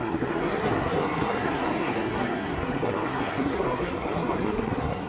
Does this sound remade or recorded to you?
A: remade